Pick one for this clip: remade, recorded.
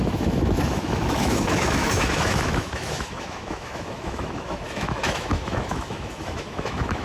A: remade